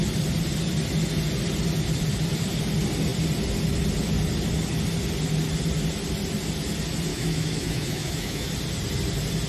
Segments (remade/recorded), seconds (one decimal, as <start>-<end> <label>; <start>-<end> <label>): 0.0-7.1 recorded; 7.1-8.5 remade; 8.5-9.5 recorded